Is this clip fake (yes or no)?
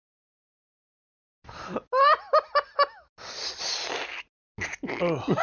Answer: no